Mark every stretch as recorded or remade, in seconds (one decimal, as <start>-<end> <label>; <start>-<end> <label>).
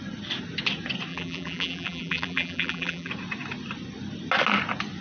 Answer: 0.0-1.1 recorded; 1.1-3.1 remade; 3.1-5.0 recorded